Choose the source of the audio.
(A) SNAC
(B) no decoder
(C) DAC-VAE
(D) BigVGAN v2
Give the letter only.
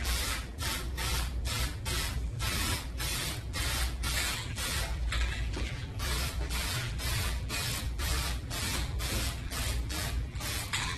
D